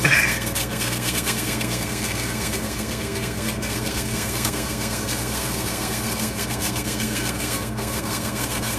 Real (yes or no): no